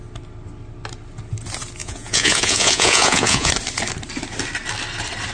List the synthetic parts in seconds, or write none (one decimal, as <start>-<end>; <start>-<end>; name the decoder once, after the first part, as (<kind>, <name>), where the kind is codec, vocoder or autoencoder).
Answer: 1.8-3.5 (vocoder, Vocos)